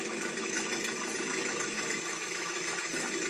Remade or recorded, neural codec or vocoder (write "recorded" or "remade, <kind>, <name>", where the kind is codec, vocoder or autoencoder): remade, autoencoder, DAC-VAE